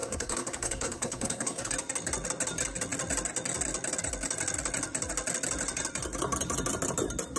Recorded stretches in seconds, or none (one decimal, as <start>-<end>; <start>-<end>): 1.7-7.4